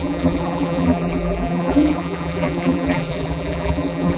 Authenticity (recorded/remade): remade